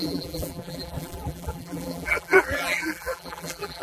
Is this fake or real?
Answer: fake